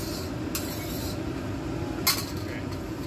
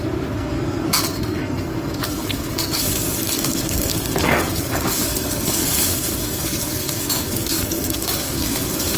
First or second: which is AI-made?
second